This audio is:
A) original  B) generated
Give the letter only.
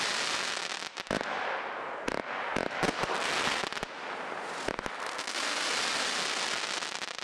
A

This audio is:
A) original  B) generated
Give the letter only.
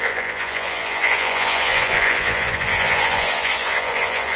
B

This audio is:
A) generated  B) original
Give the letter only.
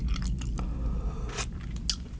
B